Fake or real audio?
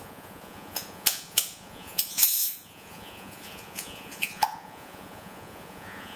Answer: fake